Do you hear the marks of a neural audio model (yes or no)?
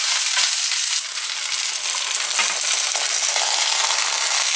no